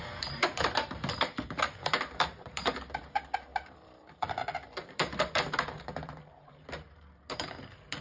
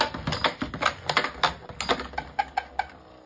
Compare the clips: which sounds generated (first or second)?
first